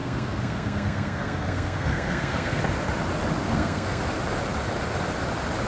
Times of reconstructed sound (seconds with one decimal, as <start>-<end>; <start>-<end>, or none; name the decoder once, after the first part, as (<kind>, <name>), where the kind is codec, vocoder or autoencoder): 0.0-2.6 (codec, SNAC); 3.4-4.0